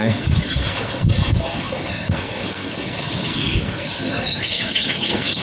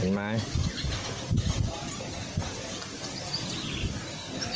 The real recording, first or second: second